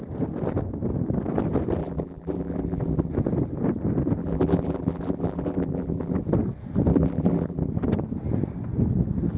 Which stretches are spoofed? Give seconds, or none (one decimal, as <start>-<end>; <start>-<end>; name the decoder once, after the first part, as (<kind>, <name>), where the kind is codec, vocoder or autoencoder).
1.8-3.1 (vocoder, BigVGAN v2); 4.2-6.2; 6.9-7.7